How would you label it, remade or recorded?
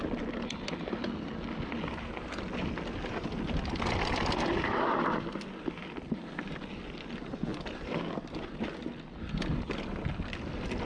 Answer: recorded